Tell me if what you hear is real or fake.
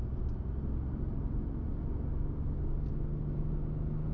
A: real